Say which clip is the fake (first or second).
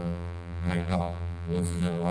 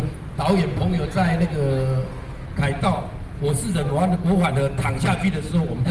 first